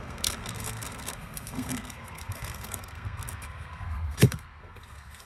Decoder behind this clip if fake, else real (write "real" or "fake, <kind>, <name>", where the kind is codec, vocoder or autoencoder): fake, codec, SNAC